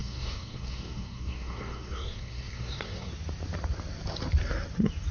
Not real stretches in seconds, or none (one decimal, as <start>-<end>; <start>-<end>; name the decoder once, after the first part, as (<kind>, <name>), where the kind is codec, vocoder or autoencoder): 0.0-3.1 (codec, SNAC)